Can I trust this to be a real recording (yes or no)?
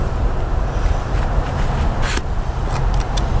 yes